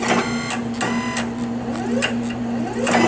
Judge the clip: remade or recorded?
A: recorded